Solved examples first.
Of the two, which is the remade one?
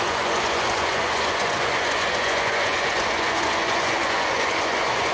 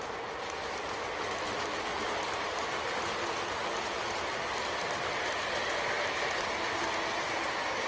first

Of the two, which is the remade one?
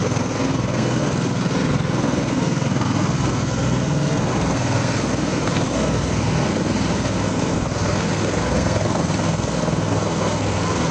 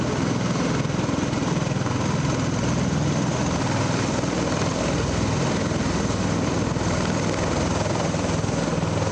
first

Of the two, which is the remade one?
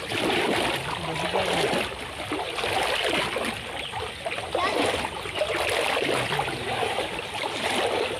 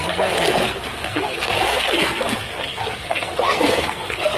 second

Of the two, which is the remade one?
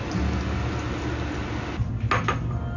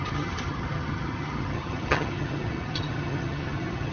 second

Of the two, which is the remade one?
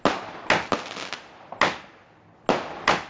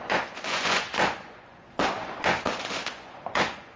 second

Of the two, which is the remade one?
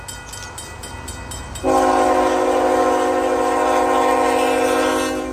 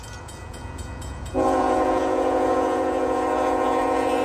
second